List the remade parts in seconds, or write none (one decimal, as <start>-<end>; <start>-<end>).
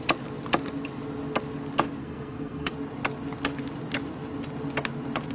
2.0-2.7